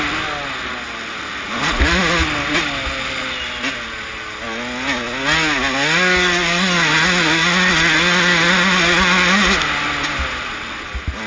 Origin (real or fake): real